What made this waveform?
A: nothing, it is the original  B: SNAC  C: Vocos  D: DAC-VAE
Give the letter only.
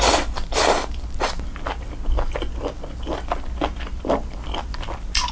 A